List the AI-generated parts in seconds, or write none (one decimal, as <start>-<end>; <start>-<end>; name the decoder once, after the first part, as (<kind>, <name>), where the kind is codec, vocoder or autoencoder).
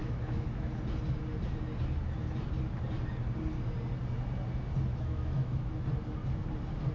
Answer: 0.0-0.7 (autoencoder, DAC-VAE); 4.9-5.8